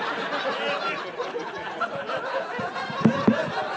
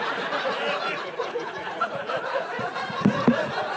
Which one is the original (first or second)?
first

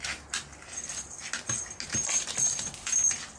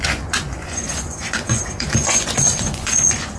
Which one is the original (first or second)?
first